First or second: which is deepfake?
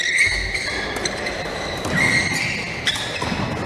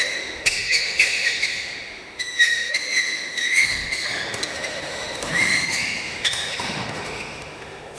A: second